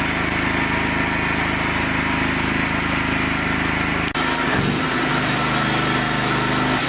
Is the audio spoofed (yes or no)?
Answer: no